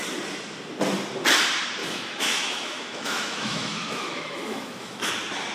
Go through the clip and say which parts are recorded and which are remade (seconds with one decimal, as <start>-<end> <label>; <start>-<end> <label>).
0.0-1.8 recorded; 1.8-5.1 remade; 5.1-5.5 recorded